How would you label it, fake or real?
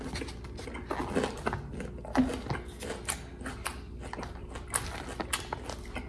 real